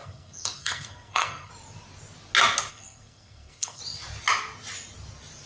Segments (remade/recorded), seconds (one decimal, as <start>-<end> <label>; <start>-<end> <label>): 0.0-1.5 remade; 1.5-2.7 recorded; 2.7-3.8 remade; 3.8-5.5 recorded